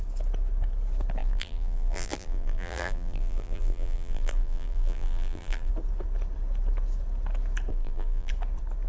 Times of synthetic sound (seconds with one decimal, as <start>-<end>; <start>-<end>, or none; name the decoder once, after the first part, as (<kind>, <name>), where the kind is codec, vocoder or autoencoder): 1.2-5.7 (vocoder, BigVGAN v2); 7.7-8.3